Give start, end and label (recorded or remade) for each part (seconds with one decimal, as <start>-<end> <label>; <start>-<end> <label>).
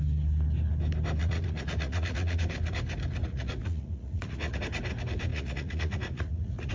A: 0.0-1.2 recorded; 1.2-2.4 remade; 2.4-3.2 recorded; 3.2-4.6 remade; 4.6-5.3 recorded; 5.3-6.7 remade